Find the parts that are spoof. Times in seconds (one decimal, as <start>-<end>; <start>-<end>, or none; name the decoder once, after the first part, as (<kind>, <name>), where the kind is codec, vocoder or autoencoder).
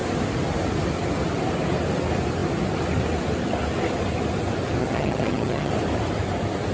4.8-5.7 (vocoder, HiFi-GAN)